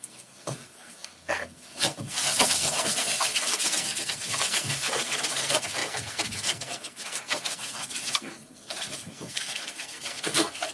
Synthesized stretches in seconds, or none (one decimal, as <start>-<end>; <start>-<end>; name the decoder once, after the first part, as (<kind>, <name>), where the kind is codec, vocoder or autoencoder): 0.0-10.7 (codec, SNAC)